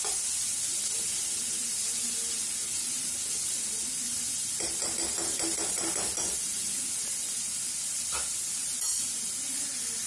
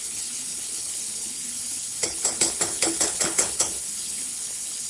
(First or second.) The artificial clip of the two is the second